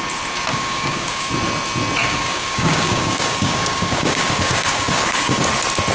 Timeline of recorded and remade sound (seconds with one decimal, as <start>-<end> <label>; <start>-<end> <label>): 0.0-0.5 recorded; 0.5-1.3 remade; 1.3-2.0 recorded; 2.0-5.5 remade; 5.5-5.9 recorded